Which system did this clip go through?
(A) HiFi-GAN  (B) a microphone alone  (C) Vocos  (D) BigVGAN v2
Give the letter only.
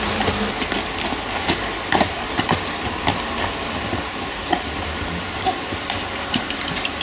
B